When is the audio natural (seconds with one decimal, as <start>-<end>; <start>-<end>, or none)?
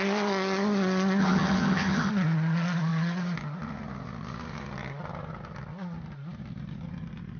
0.0-1.2; 2.1-7.4